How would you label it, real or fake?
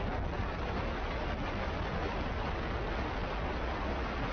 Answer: real